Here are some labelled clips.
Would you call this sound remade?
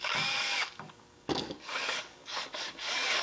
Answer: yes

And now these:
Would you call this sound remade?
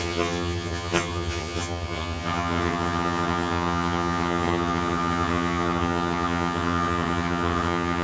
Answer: yes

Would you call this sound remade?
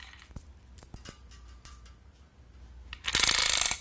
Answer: no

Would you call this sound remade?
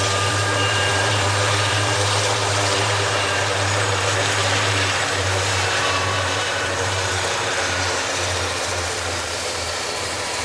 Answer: yes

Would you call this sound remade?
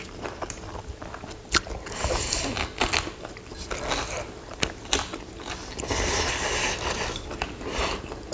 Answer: no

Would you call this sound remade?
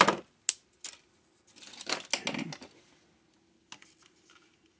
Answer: no